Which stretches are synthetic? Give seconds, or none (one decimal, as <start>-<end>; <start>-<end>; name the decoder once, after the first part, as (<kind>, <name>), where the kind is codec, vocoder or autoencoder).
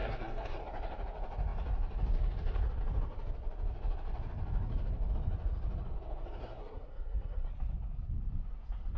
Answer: 0.0-0.6 (codec, SNAC); 6.4-7.5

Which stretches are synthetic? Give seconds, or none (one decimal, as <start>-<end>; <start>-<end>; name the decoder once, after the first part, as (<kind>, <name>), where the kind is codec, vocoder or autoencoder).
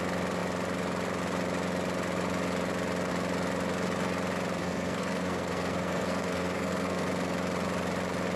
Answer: 4.6-7.1 (codec, SNAC)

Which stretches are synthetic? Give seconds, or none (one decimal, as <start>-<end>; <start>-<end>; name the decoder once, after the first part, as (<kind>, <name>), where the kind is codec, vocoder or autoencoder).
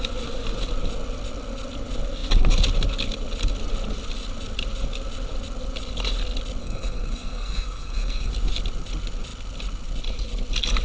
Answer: 6.6-8.3 (codec, SNAC)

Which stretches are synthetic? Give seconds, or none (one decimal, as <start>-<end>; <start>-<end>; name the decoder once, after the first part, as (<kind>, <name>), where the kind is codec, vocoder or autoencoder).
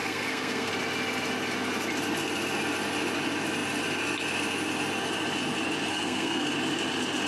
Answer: 0.0-0.7 (codec, SNAC); 5.9-6.5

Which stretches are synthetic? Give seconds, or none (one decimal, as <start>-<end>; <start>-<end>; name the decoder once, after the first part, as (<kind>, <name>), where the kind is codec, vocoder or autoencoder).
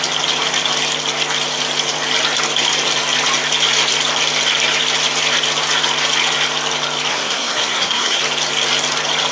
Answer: 7.1-8.2 (codec, SNAC)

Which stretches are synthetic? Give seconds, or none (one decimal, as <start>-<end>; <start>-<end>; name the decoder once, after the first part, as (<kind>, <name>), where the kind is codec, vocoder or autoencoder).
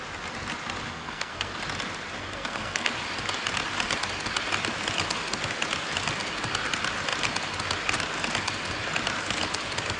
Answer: 0.9-1.6 (codec, SNAC); 2.2-2.9